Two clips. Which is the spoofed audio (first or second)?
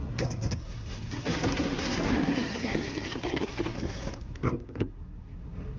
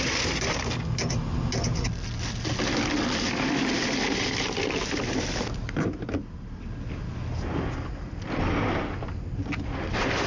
first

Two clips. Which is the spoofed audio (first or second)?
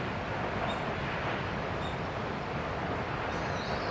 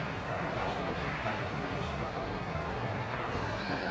second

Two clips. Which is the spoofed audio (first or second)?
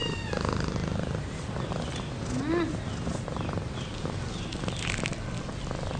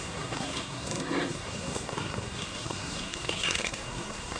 second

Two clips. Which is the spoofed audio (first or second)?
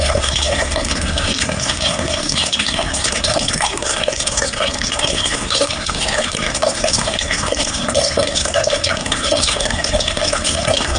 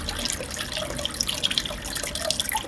first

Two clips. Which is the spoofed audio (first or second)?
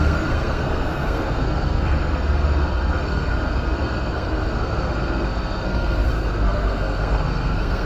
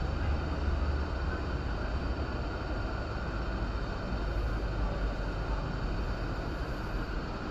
first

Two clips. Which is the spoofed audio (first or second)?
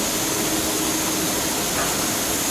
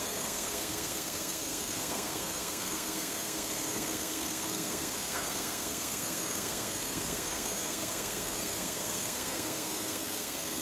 second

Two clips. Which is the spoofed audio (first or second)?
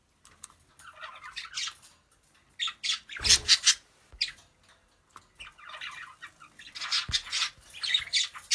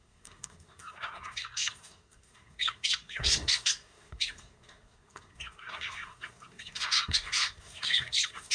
second